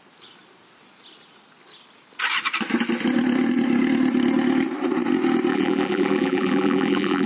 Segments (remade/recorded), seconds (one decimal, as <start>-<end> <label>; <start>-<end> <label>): 0.0-5.5 recorded; 5.5-7.3 remade